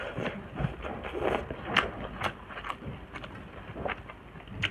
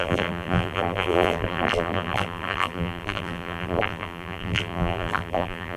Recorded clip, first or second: first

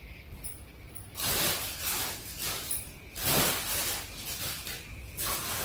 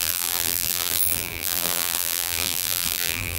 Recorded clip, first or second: first